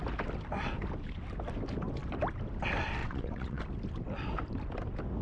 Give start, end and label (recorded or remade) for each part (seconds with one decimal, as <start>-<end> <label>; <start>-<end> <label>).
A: 0.0-3.0 recorded; 3.0-3.6 remade; 3.6-5.2 recorded